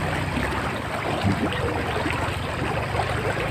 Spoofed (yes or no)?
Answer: no